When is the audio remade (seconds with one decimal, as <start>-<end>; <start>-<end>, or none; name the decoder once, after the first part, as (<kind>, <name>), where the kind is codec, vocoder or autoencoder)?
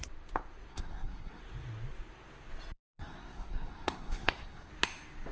0.7-1.4 (codec, SNAC); 2.9-4.7